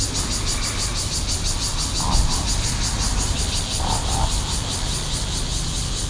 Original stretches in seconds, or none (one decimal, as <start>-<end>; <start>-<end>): 0.0-6.1